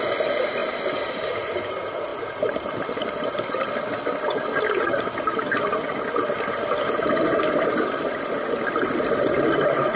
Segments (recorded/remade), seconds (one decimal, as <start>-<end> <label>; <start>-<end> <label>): 0.0-10.0 recorded